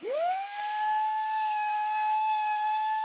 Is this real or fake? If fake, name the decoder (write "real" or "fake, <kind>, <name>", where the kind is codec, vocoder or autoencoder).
fake, codec, SNAC